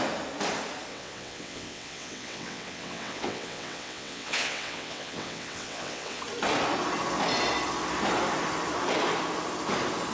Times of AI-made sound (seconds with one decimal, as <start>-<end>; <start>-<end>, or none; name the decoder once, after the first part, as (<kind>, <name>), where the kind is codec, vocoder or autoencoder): 0.9-6.2 (vocoder, WaveNeXt)